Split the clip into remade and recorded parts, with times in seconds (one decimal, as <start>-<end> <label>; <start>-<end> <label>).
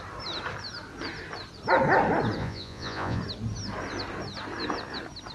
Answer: 0.0-2.4 recorded; 2.4-3.2 remade; 3.2-5.3 recorded